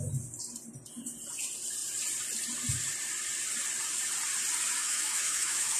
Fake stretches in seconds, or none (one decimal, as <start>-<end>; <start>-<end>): 4.8-5.8

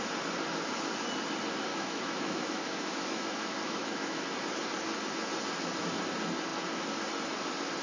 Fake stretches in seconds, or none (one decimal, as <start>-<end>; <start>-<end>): 1.7-4.2

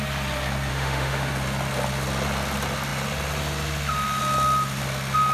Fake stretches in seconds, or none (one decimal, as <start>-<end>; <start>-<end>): 0.7-1.3

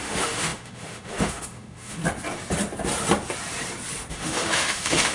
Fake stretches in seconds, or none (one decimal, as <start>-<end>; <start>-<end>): 0.0-2.0; 4.1-5.1

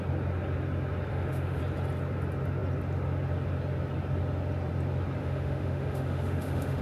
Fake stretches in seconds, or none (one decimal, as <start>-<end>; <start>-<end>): 1.1-1.6; 5.2-6.8

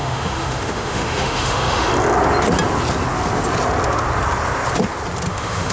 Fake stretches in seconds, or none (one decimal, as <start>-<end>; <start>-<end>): 0.0-1.9; 5.3-5.7

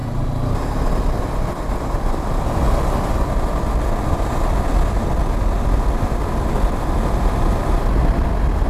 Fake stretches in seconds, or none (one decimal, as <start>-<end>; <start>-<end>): none

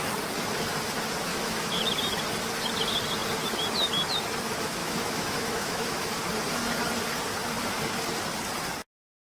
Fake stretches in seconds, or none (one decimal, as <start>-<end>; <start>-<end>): 1.3-1.8; 4.8-6.1